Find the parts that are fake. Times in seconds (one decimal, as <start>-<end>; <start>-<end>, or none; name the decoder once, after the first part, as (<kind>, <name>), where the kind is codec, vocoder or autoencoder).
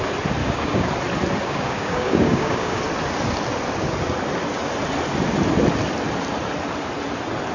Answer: 0.4-0.9 (codec, DAC); 1.4-2.8